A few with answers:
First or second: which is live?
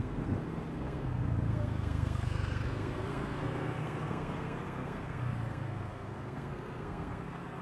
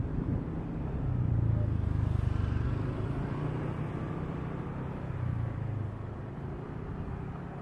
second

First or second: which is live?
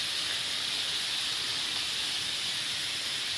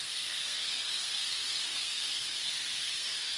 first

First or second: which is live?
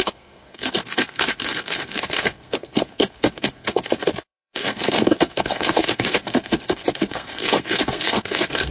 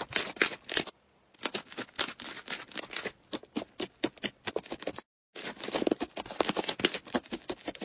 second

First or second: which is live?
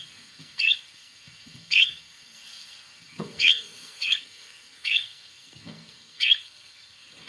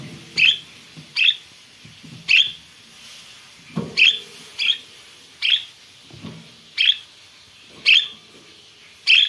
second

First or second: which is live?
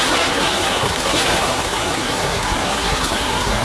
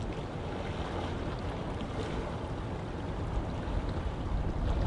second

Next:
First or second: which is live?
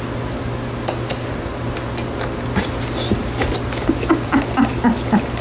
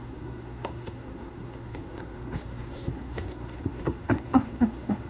first